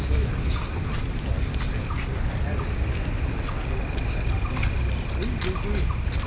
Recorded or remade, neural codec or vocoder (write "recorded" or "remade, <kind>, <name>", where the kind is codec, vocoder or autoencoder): recorded